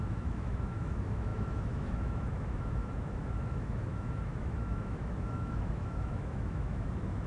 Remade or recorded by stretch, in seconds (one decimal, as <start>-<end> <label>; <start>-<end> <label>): 0.0-7.3 remade

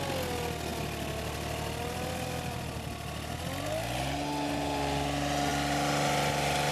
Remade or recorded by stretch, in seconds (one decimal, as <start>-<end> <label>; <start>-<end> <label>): 0.0-6.7 recorded

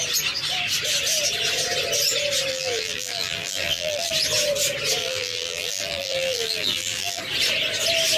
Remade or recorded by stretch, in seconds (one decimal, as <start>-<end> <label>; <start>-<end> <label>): 0.0-2.5 recorded; 2.5-4.1 remade; 4.1-5.0 recorded; 5.0-7.2 remade; 7.2-8.2 recorded

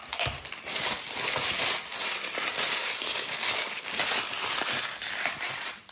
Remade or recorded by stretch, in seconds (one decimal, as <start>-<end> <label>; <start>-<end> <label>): 0.0-2.8 recorded; 2.8-4.0 remade; 4.0-5.9 recorded